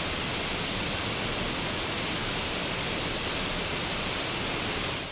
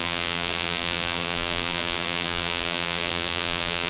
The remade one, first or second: second